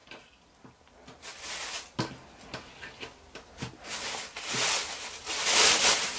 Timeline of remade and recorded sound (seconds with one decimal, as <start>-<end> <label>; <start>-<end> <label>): 0.0-6.2 recorded